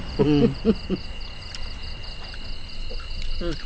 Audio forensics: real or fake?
real